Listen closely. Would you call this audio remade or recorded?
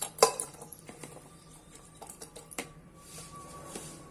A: remade